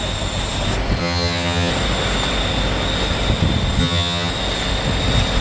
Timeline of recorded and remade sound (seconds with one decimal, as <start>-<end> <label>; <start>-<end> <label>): 0.0-1.0 recorded; 1.0-1.7 remade; 1.7-3.8 recorded; 3.8-4.3 remade; 4.3-5.4 recorded